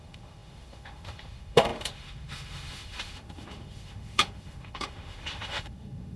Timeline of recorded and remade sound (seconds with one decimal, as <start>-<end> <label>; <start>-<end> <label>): 0.0-6.2 remade